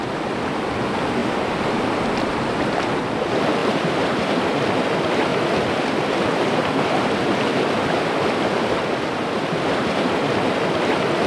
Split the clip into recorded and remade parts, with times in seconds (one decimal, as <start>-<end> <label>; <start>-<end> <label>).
0.0-5.3 recorded; 5.3-8.6 remade; 8.6-11.3 recorded